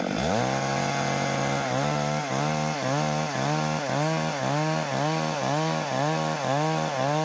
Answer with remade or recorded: recorded